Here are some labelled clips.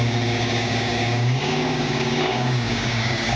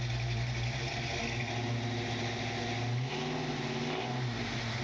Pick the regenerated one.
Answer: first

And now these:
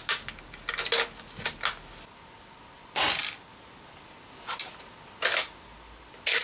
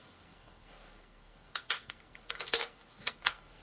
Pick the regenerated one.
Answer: second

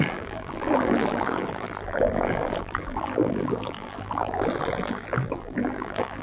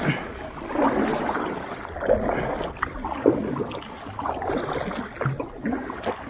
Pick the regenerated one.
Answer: first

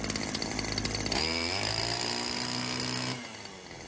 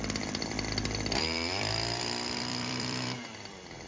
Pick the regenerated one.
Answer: second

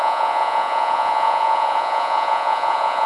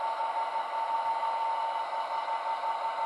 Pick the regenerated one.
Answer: first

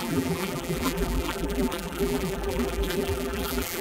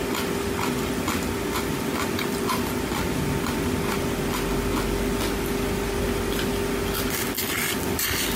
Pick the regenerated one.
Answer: first